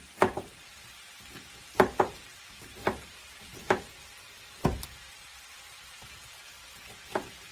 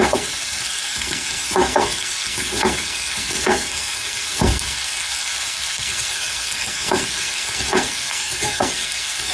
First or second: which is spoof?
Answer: second